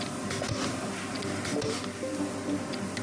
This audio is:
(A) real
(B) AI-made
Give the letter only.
A